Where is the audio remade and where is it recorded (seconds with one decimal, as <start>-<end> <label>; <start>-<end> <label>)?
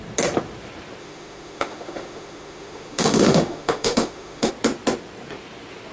0.0-1.0 recorded; 1.0-4.5 remade; 4.5-5.9 recorded